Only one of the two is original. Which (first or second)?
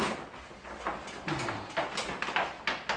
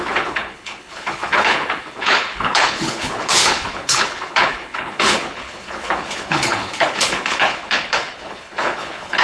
first